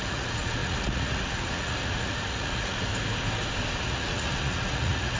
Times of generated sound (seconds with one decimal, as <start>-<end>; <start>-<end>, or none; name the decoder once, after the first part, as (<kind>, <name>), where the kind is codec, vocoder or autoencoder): 0.0-2.9 (vocoder, Vocos); 3.8-5.2